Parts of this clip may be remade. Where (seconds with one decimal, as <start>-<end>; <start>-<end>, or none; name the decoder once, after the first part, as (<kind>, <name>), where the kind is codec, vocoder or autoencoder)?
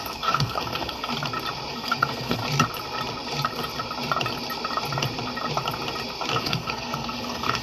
0.0-1.1 (codec, SNAC); 1.7-2.4; 6.4-7.6